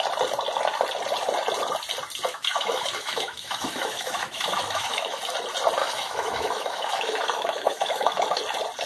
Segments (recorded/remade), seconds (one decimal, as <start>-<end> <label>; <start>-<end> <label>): 0.0-2.3 recorded; 2.3-5.2 remade; 5.2-5.8 recorded; 5.8-8.4 remade; 8.4-8.9 recorded